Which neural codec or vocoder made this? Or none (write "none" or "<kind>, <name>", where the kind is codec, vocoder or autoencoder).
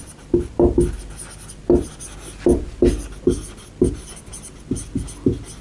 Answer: none